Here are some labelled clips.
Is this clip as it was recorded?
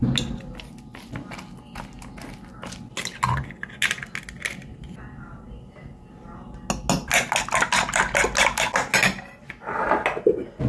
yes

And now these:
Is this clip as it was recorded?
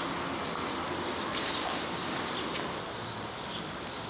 yes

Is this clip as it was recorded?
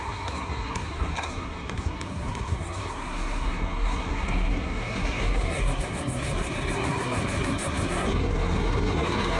no